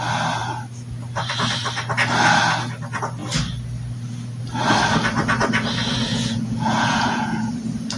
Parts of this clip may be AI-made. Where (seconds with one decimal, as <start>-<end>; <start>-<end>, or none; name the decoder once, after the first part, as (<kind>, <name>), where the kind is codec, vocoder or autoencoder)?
6.1-7.5 (vocoder, Vocos)

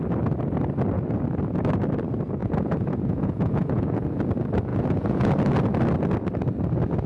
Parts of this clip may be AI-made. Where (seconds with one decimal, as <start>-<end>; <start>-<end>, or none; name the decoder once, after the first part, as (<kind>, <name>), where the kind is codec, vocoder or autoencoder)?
2.4-4.2 (vocoder, Vocos); 4.7-5.3

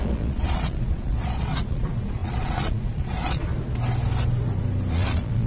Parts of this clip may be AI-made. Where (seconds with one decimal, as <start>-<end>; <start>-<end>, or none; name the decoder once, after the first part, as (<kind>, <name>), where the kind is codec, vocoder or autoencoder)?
0.0-3.5 (vocoder, Vocos); 4.9-5.5